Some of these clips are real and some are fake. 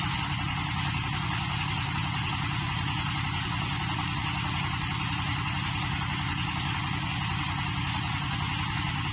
real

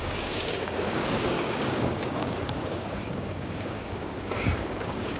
fake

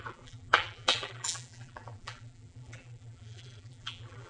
fake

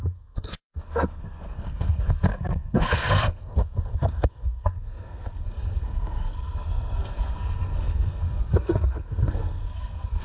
fake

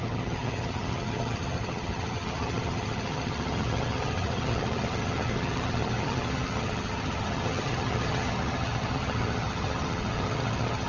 fake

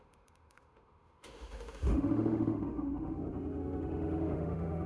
fake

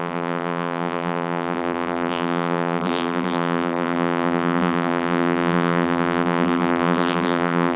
fake